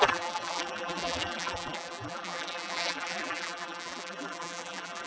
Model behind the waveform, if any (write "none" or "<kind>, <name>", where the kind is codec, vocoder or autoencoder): vocoder, BigVGAN v2